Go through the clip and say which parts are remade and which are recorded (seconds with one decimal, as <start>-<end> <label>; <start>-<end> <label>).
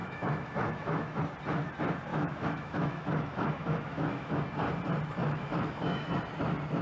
0.0-1.2 remade; 1.2-2.1 recorded; 2.1-4.4 remade; 4.4-5.2 recorded; 5.2-6.2 remade; 6.2-6.8 recorded